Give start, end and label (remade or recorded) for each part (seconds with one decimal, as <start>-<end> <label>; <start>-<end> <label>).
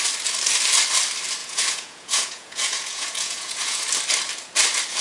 0.0-1.4 recorded; 1.4-3.8 remade; 3.8-5.0 recorded